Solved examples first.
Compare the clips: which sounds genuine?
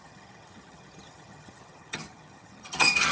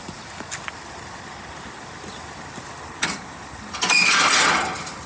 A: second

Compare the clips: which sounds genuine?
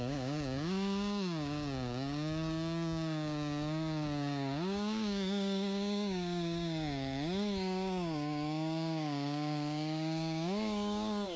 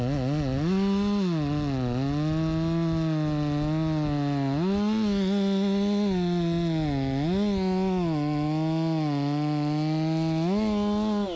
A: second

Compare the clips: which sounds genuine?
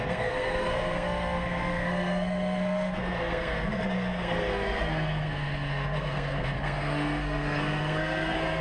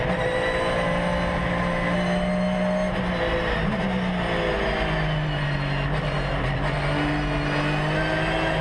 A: second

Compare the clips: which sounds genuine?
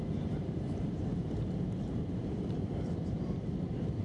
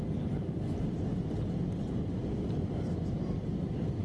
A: second